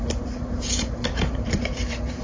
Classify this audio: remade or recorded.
remade